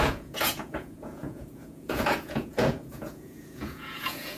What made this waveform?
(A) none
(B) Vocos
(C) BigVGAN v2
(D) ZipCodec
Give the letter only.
B